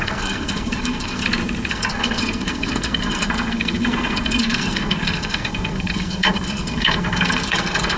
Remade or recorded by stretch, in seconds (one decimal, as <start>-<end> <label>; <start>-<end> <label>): 0.0-1.2 remade; 1.2-1.7 recorded; 1.7-8.0 remade